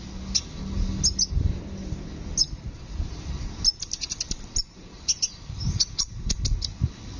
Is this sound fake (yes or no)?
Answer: no